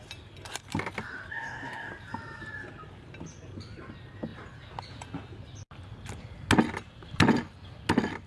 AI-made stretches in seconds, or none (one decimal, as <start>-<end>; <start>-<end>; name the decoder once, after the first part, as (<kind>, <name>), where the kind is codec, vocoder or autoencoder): 1.3-1.9 (codec, DAC)